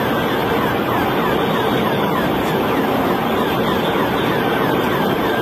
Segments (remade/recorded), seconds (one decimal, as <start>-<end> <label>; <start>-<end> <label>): 0.0-0.4 recorded; 0.4-3.6 remade; 3.6-5.4 recorded